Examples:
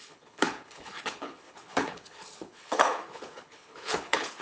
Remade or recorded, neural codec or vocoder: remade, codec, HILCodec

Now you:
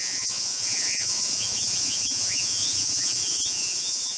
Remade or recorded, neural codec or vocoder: remade, vocoder, Vocos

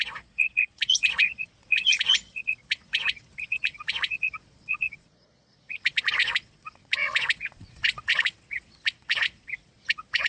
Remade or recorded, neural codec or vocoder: remade, vocoder, Vocos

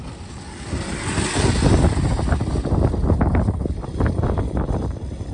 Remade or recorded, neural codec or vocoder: recorded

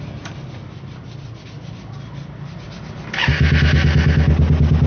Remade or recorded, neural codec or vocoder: recorded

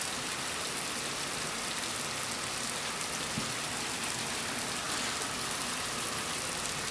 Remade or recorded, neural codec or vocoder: recorded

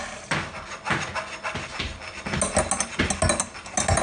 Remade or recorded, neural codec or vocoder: recorded